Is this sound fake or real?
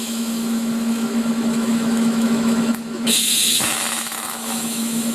fake